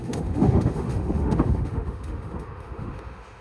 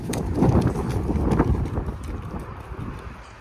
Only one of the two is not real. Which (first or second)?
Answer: first